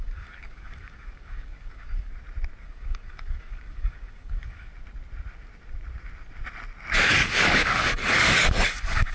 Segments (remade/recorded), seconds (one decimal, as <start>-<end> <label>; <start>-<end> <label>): 0.0-2.1 remade; 2.1-2.6 recorded; 2.6-4.7 remade; 4.7-7.1 recorded; 7.1-9.1 remade